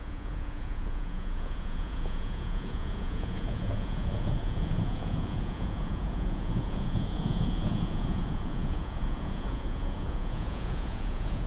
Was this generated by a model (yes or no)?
yes